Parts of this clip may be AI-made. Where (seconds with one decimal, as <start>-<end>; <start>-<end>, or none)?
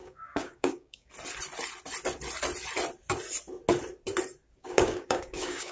0.0-1.1; 4.6-5.7